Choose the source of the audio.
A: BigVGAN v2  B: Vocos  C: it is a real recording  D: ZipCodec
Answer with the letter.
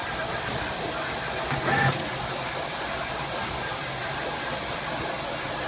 C